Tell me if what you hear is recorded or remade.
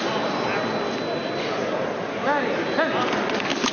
recorded